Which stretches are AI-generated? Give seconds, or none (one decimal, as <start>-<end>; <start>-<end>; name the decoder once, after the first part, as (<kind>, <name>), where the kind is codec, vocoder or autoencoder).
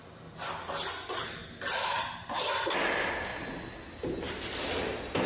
none